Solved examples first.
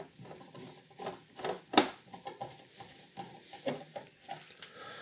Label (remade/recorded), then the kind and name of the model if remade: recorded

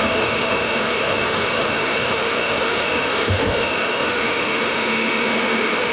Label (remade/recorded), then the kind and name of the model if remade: remade, autoencoder, DAC-VAE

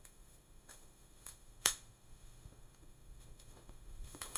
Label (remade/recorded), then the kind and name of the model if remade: remade, autoencoder, DAC-VAE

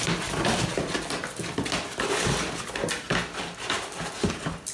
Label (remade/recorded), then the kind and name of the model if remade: recorded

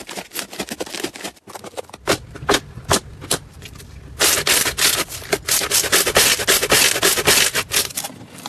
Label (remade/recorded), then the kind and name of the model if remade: recorded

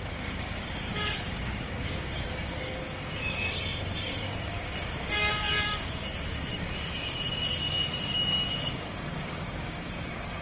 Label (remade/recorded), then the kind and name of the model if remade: remade, codec, DAC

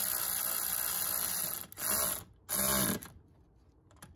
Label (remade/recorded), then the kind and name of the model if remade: recorded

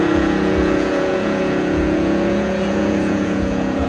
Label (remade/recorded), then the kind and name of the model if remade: remade, vocoder, Vocos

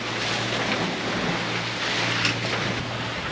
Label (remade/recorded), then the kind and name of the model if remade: recorded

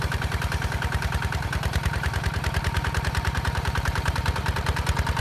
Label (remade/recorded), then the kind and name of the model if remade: remade, vocoder, BigVGAN v2